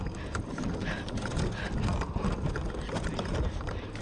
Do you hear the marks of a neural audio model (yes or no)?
no